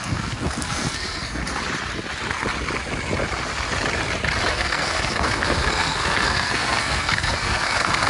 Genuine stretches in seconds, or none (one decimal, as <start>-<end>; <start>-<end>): 1.4-4.5